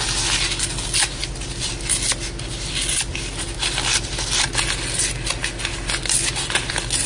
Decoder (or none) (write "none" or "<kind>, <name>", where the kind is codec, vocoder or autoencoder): none